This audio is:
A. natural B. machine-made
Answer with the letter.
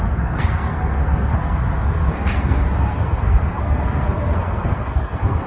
B